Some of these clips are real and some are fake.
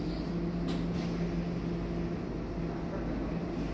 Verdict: real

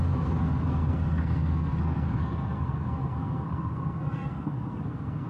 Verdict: fake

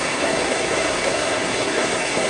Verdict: fake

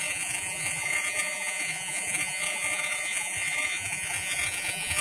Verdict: fake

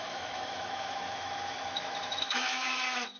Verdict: fake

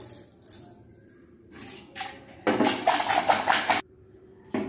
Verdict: real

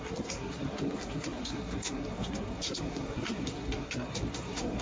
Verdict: fake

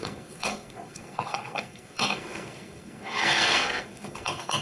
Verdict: fake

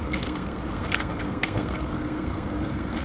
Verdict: fake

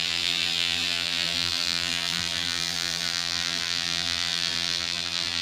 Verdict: fake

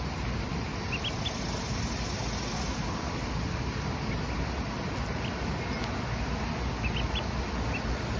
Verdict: real